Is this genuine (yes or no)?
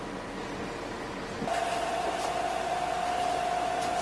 yes